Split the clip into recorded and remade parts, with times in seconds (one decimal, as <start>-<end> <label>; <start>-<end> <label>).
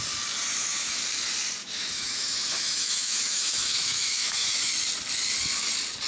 0.0-0.5 recorded; 0.5-1.0 remade; 1.0-1.6 recorded; 1.6-4.7 remade; 4.7-6.1 recorded